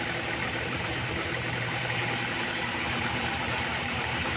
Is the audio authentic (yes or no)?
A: no